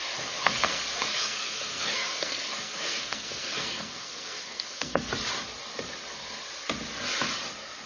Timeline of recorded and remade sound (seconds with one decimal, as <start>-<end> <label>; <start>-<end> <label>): 0.0-0.4 recorded; 0.4-5.1 remade; 5.1-7.9 recorded